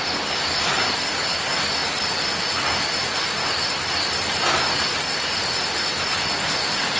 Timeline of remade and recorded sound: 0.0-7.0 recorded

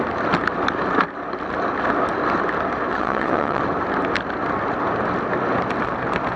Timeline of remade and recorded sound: 0.0-2.9 recorded; 2.9-3.6 remade; 3.6-6.4 recorded

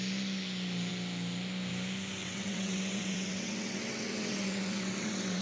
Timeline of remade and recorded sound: 0.0-2.2 recorded; 2.2-5.4 remade

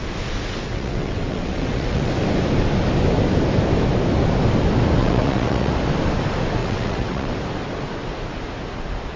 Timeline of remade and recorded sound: 0.0-0.7 recorded; 0.7-2.1 remade; 2.1-5.0 recorded; 5.0-5.7 remade; 5.7-6.6 recorded; 6.6-7.3 remade; 7.3-9.2 recorded

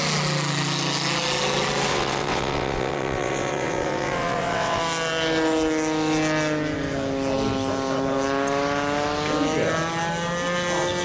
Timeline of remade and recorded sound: 0.0-1.9 recorded; 1.9-4.8 remade; 4.8-11.0 recorded

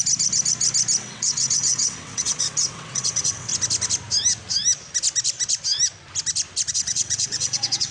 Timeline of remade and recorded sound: 0.0-1.0 recorded; 1.0-3.5 remade; 3.5-6.7 recorded; 6.7-7.9 remade